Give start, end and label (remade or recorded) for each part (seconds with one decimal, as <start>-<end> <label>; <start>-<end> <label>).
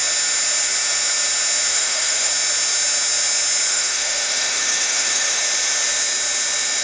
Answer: 0.0-1.7 recorded; 1.7-2.3 remade; 2.3-3.7 recorded; 3.7-5.4 remade; 5.4-6.8 recorded